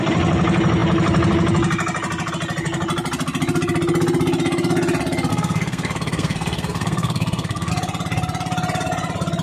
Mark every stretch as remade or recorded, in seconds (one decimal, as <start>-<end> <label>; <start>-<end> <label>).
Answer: 0.0-5.3 recorded; 5.3-7.7 remade; 7.7-9.4 recorded